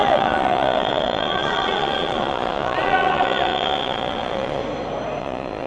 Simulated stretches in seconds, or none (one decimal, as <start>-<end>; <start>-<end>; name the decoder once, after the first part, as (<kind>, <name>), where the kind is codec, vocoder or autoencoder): 0.0-4.6 (vocoder, Vocos); 5.2-5.7